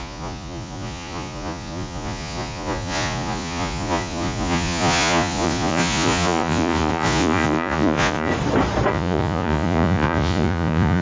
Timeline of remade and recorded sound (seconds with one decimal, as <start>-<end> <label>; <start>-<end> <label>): 0.0-8.3 remade; 8.3-8.9 recorded; 8.9-11.0 remade